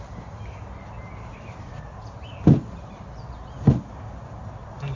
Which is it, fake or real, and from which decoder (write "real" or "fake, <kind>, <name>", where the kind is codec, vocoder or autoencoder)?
real